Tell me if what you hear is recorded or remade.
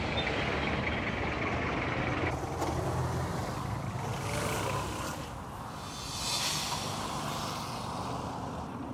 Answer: recorded